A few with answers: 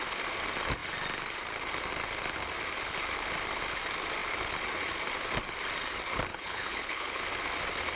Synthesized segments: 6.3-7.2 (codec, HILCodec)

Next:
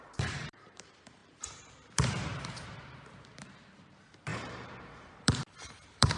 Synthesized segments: 0.0-6.2 (vocoder, BigVGAN v2)

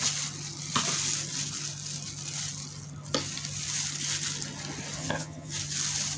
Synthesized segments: 5.0-5.5 (vocoder, HiFi-GAN)

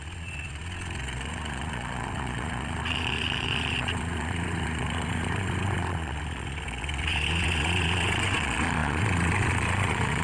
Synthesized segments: 0.0-10.2 (vocoder, Vocos)

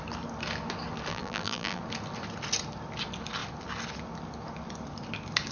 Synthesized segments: 1.1-1.8 (vocoder, BigVGAN v2)

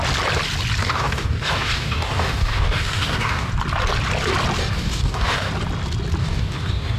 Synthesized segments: 0.8-3.5 (codec, DAC); 4.6-5.5; 6.2-7.0

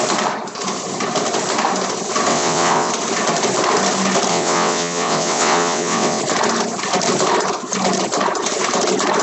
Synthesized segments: 2.3-2.9 (vocoder, WaveNeXt); 4.3-6.2

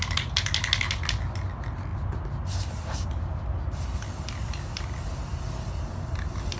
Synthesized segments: none